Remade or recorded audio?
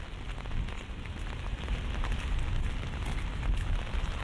recorded